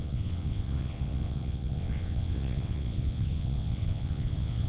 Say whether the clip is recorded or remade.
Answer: remade